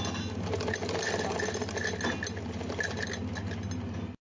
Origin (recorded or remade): recorded